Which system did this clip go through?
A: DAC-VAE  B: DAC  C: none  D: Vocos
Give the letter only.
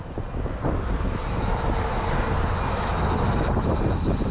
C